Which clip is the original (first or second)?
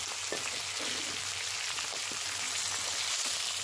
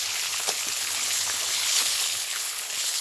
first